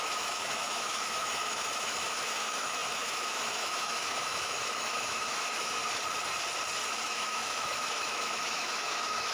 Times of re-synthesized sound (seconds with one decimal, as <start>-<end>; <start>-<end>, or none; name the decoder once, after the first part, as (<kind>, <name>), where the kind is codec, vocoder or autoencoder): 0.0-5.8 (autoencoder, DAC-VAE); 7.0-9.3